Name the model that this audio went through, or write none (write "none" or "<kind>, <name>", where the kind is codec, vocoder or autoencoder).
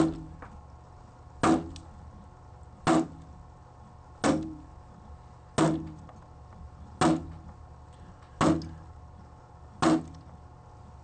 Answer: none